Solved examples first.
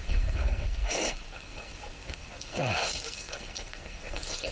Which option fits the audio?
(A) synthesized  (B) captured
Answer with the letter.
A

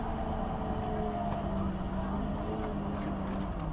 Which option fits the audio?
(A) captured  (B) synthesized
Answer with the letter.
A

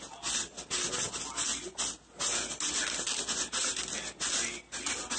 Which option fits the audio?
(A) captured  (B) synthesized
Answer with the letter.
A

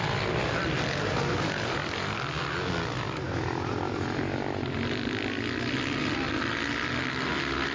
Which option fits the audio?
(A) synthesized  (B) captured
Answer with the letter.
B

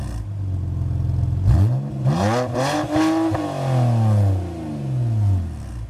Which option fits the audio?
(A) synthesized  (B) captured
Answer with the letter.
B